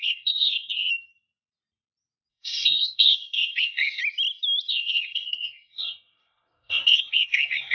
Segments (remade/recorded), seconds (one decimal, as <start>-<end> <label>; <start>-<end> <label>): 0.0-0.9 remade; 0.9-2.3 recorded; 2.3-4.0 remade; 4.0-4.7 recorded; 4.7-7.7 remade